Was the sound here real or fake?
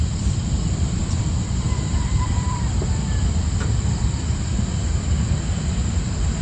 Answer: fake